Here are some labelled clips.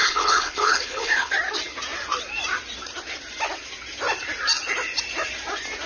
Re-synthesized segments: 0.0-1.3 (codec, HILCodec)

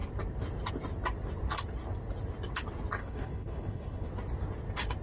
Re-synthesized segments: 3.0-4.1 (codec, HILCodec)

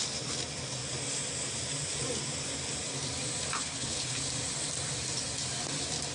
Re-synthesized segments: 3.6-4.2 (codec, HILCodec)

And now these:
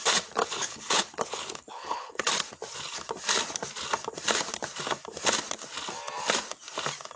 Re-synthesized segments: 0.4-2.3 (codec, HILCodec)